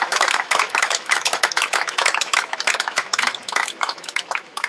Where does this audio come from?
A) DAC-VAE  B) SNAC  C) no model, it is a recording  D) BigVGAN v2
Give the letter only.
A